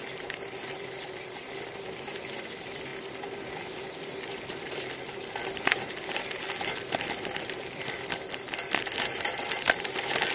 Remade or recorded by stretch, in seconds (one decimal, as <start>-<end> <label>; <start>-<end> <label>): 0.0-10.3 recorded